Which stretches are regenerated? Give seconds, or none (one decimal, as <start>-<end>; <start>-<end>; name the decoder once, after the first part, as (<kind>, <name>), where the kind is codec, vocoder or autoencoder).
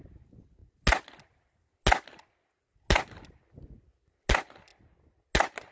none